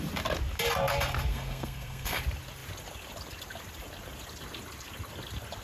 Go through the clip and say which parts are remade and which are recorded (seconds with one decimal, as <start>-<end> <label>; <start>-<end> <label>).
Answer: 0.0-1.3 recorded; 1.3-2.2 remade; 2.2-5.6 recorded